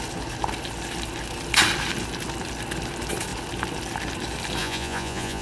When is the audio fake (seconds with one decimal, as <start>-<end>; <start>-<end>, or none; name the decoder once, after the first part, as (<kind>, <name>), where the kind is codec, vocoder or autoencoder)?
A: 4.6-5.4 (vocoder, Vocos)